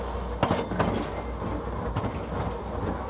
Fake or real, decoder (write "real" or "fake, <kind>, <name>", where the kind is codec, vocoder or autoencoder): real